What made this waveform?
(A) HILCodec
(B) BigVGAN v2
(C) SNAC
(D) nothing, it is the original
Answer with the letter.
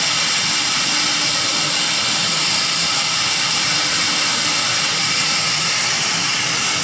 D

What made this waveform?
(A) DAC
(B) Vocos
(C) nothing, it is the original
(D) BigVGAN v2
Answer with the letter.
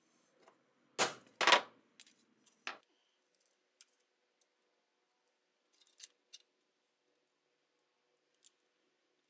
C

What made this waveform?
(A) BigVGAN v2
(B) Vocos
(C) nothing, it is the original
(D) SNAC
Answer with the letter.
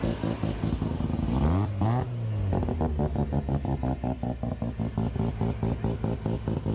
C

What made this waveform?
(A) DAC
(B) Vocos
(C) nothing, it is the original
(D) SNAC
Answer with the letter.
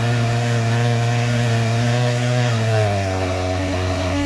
D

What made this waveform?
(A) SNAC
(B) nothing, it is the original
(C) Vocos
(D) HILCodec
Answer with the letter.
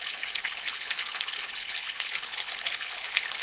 D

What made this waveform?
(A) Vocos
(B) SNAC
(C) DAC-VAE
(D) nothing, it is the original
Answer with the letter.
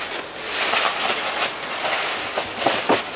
D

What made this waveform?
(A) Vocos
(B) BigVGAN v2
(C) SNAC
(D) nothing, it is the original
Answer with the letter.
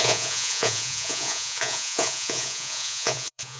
A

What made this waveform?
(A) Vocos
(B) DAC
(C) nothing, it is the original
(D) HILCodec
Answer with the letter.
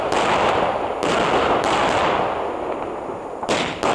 C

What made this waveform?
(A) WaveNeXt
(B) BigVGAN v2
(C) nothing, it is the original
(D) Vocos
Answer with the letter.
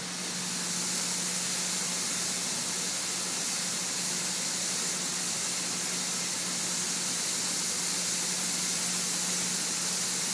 C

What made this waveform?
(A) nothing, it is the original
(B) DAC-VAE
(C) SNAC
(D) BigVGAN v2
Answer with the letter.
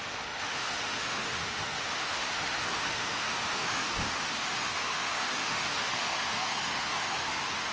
B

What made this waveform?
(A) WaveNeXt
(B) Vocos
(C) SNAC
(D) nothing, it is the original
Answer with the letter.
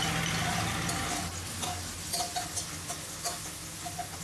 D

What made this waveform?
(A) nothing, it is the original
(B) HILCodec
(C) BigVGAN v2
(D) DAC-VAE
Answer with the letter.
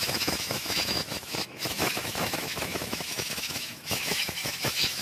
D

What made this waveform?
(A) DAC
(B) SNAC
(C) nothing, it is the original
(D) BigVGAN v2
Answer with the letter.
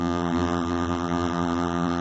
D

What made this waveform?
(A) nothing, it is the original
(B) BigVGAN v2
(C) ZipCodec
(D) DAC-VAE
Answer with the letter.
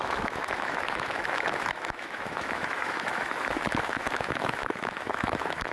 D